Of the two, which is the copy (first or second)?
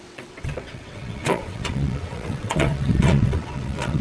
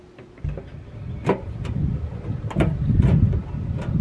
first